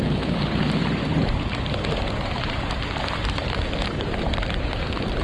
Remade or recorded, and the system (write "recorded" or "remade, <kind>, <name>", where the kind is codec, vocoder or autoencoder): remade, vocoder, BigVGAN v2